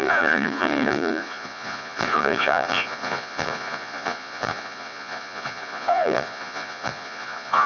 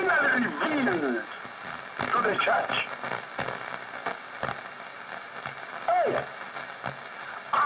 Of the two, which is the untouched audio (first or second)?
second